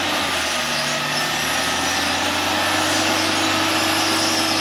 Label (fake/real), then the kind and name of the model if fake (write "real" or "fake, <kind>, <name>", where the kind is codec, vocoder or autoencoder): real